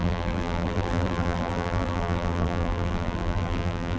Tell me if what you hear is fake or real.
fake